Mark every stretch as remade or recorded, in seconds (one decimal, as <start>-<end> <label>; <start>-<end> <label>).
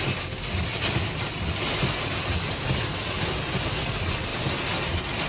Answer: 0.0-5.3 recorded